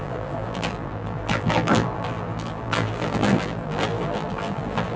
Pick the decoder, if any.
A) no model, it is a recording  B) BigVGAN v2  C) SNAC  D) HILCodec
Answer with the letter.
B